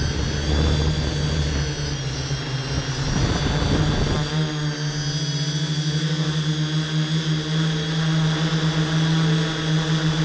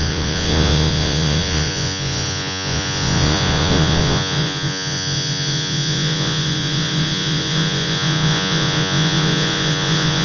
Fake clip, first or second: second